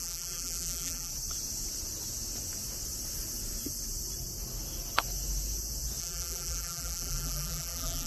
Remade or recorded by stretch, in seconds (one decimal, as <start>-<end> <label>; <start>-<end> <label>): 0.0-1.1 remade; 1.1-6.0 recorded; 6.0-8.1 remade